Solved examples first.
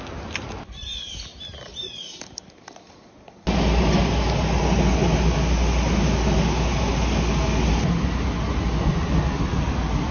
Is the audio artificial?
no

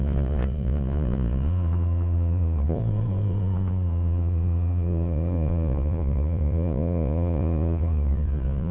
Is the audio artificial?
yes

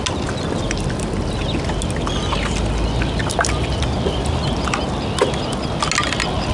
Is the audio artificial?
no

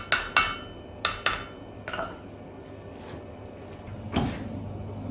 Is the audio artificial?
no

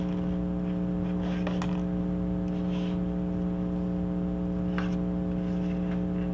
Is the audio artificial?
no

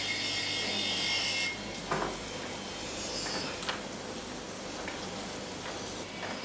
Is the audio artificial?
no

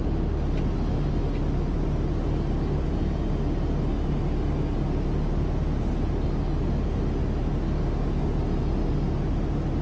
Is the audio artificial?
no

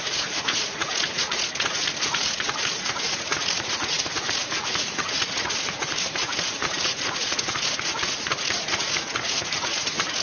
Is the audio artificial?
yes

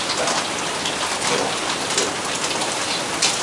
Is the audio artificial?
no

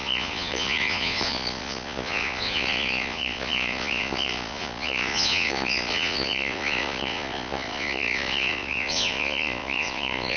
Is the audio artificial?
yes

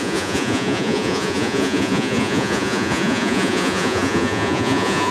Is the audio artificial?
yes